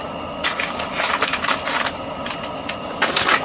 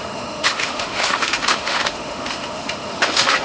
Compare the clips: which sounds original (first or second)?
first